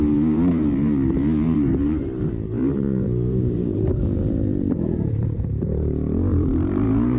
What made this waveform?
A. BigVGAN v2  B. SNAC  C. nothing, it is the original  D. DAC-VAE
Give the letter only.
A